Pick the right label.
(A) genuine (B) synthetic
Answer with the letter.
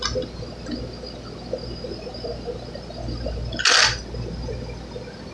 A